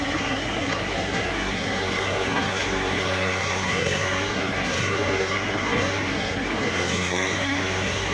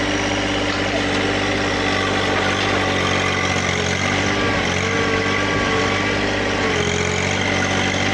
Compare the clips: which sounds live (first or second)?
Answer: second